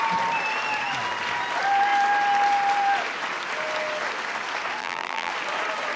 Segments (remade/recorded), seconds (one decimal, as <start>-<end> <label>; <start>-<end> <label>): 0.0-4.8 recorded; 4.8-5.3 remade; 5.3-6.0 recorded

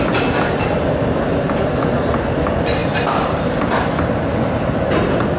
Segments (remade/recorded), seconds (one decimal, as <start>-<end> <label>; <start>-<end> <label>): 0.0-2.8 recorded; 2.8-3.4 remade; 3.4-5.4 recorded

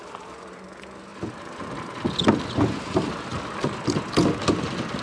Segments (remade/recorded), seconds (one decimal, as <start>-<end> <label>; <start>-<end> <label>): 0.0-5.0 recorded

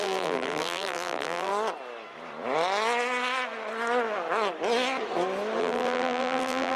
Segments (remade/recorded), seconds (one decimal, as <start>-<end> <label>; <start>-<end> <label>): 0.0-1.5 remade; 1.5-5.6 recorded; 5.6-6.8 remade

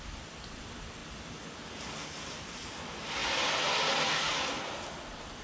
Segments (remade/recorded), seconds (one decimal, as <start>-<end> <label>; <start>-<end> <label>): 0.0-5.4 recorded

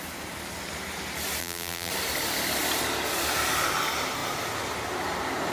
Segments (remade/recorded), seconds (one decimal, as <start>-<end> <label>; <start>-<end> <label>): 0.0-1.4 recorded; 1.4-1.9 remade; 1.9-5.5 recorded